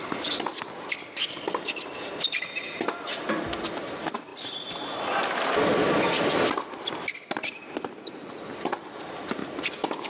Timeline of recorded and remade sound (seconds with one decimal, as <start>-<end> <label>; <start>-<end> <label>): 0.0-0.5 remade; 0.5-1.3 recorded; 1.3-4.3 remade; 4.3-9.0 recorded; 9.0-9.4 remade; 9.4-10.1 recorded